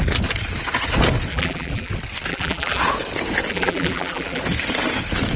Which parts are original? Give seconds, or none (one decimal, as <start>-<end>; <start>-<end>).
0.0-1.3; 1.9-2.3; 2.8-3.5; 4.4-5.4